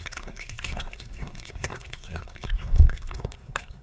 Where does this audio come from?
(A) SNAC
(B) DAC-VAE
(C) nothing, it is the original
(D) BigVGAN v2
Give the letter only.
A